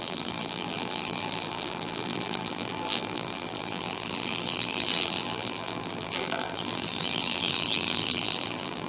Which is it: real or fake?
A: fake